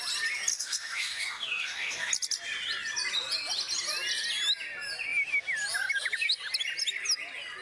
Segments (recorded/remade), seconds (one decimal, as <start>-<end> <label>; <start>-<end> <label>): 0.0-0.5 recorded; 0.5-2.1 remade; 2.1-7.6 recorded